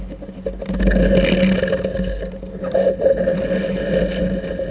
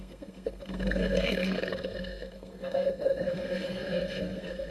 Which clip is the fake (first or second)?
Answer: second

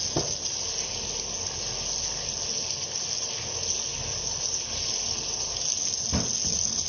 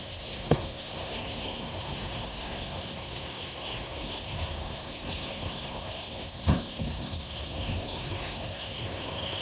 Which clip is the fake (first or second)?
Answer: second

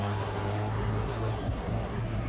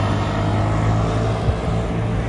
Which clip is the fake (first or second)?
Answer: first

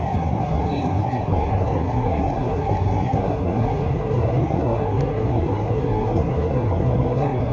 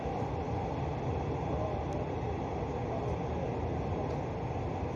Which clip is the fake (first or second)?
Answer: first